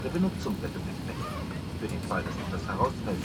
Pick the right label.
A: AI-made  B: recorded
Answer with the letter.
B